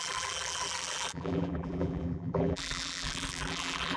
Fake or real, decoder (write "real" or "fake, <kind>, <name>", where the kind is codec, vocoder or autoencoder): fake, vocoder, BigVGAN v2